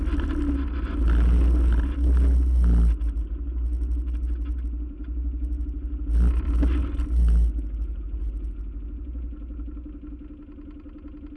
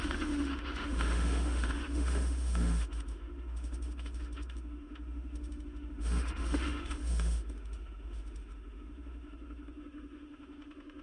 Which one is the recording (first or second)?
first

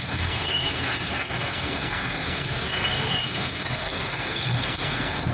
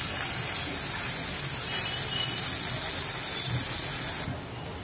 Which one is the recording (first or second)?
second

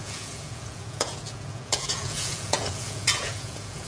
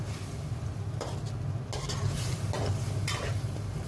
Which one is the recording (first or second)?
second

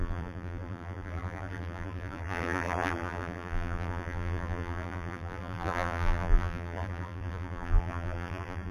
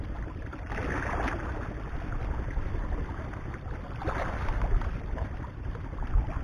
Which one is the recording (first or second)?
second